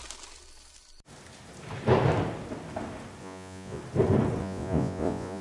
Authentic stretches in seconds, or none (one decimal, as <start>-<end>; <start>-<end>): 0.0-3.2; 3.8-4.4